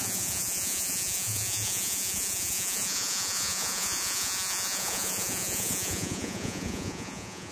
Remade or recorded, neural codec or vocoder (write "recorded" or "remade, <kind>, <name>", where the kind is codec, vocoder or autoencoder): remade, vocoder, Vocos